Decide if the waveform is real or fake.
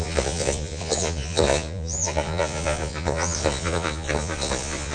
fake